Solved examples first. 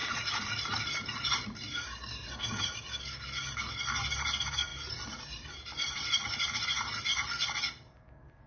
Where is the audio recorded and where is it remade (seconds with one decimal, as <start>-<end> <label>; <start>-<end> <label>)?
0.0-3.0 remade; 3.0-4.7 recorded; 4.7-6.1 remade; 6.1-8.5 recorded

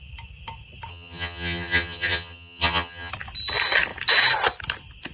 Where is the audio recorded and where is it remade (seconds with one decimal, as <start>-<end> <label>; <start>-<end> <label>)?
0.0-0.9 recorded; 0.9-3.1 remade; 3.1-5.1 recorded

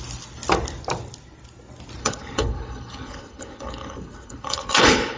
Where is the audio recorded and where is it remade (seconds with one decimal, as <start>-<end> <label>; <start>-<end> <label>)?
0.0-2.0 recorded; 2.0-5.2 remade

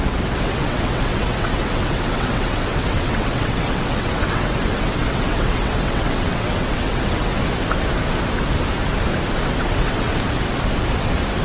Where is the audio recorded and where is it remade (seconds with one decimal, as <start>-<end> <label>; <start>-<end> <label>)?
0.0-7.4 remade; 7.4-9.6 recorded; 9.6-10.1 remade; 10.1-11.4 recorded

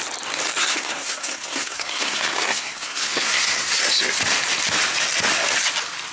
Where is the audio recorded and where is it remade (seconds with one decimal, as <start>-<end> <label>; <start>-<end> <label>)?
0.0-0.6 recorded; 0.6-3.8 remade; 3.8-6.1 recorded